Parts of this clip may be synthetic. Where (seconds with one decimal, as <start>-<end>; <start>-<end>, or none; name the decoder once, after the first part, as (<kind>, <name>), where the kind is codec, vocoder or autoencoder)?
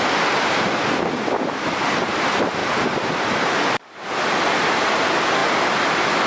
none